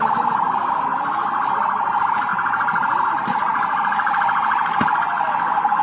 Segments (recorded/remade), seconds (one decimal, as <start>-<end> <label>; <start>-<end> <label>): 0.0-0.9 recorded; 0.9-1.5 remade; 1.5-3.5 recorded; 3.5-5.0 remade; 5.0-5.8 recorded